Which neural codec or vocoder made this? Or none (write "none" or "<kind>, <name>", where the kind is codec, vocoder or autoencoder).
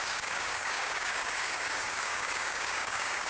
codec, DAC